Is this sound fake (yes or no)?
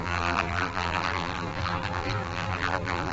yes